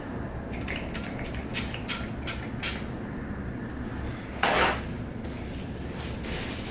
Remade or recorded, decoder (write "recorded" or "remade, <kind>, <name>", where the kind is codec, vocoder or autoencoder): recorded